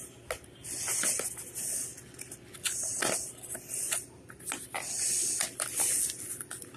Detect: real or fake real